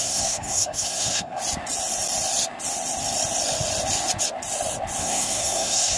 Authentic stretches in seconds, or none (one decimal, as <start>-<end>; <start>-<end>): 1.4-5.0